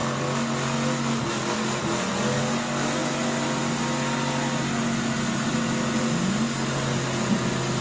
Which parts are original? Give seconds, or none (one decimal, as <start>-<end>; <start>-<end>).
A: 0.0-7.8